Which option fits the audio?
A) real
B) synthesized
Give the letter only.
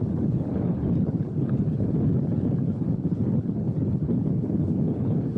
B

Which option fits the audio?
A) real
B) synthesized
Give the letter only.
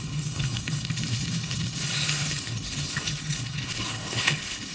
B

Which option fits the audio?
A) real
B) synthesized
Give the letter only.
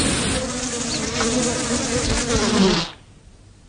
A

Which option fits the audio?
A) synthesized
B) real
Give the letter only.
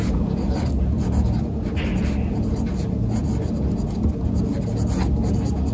B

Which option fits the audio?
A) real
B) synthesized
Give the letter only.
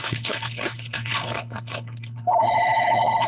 B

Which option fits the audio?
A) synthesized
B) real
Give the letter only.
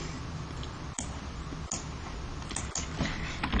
B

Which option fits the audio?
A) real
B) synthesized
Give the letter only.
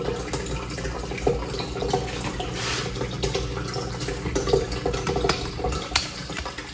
A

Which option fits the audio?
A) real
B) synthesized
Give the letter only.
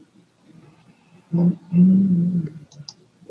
A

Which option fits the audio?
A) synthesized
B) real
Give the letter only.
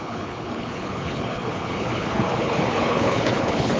A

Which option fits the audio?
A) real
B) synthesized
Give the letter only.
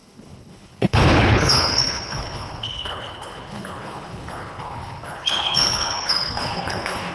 B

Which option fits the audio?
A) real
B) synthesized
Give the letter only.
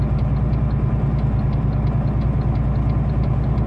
A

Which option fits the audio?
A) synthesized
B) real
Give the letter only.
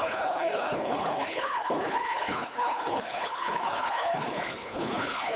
A